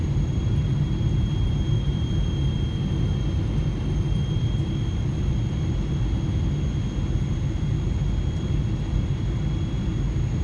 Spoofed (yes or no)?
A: no